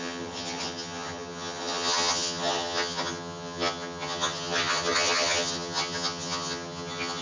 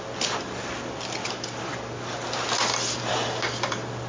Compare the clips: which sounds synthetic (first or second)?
first